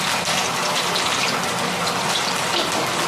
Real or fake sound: real